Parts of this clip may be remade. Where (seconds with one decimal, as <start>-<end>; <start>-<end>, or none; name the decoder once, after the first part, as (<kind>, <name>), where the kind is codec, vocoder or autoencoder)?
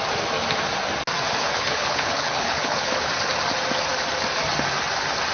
1.4-3.1 (codec, HILCodec)